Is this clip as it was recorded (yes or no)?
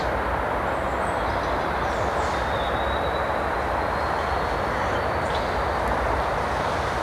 yes